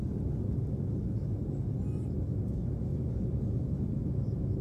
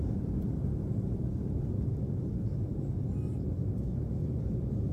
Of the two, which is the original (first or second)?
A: first